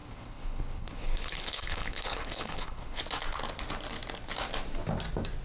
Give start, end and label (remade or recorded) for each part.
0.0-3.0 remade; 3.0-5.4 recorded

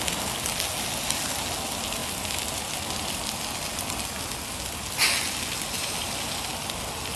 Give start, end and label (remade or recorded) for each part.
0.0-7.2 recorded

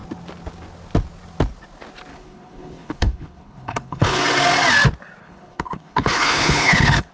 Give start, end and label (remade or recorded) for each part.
0.0-2.1 recorded; 2.1-4.2 remade; 4.2-5.2 recorded; 5.2-7.1 remade

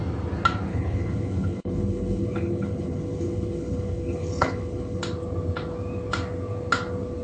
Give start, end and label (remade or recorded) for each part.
0.0-0.7 recorded; 0.7-5.0 remade; 5.0-7.2 recorded

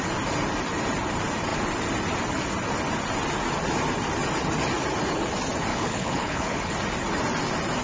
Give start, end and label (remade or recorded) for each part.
0.0-5.7 recorded; 5.7-6.7 remade; 6.7-7.8 recorded